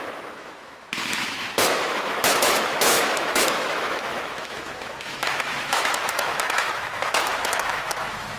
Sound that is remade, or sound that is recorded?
remade